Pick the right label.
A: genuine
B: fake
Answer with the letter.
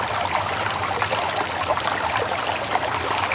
A